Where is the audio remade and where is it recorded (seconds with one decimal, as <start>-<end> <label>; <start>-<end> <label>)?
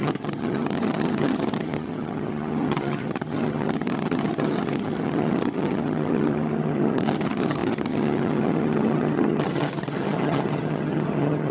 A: 0.0-11.5 remade